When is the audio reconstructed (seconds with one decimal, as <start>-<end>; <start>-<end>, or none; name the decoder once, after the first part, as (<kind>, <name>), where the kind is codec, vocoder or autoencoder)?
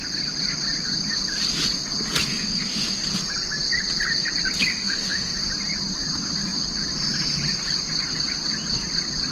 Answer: 2.3-3.0 (autoencoder, DAC-VAE); 4.7-5.3